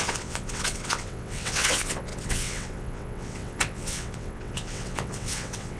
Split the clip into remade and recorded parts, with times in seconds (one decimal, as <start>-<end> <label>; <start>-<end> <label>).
0.0-5.8 remade